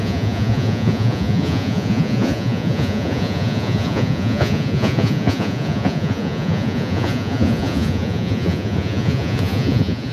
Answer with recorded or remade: remade